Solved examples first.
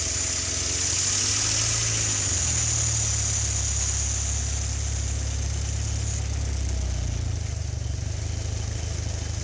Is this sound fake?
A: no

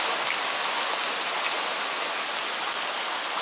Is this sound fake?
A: no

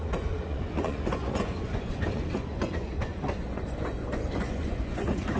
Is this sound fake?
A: yes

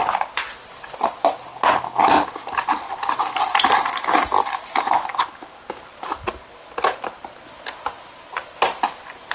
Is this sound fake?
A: no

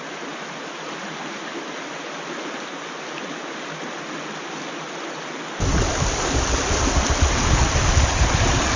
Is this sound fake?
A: no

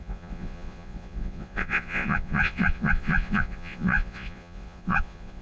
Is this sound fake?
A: yes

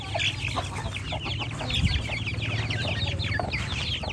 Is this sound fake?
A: no